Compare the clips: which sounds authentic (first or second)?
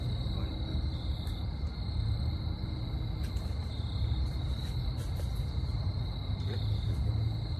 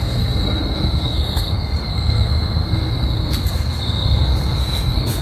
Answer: first